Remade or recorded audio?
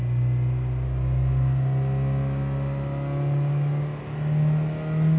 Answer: recorded